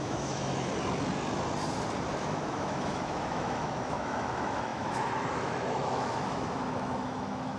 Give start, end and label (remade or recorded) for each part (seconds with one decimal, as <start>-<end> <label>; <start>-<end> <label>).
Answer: 0.0-0.7 remade; 0.7-2.2 recorded; 2.2-7.6 remade